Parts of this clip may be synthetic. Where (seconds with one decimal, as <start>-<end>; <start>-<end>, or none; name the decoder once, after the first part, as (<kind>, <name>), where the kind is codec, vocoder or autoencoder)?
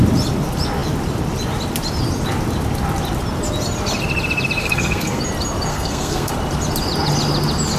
4.6-5.2 (codec, SNAC); 5.7-6.3